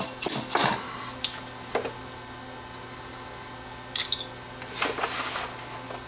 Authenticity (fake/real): real